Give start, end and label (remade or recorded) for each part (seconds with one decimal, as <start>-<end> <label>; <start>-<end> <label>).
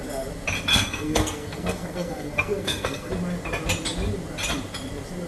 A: 0.0-0.7 recorded; 0.7-3.1 remade; 3.1-5.3 recorded